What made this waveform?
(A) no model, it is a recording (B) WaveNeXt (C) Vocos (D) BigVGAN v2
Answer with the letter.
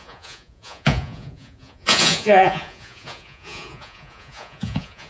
C